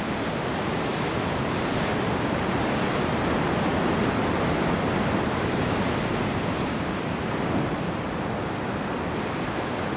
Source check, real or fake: real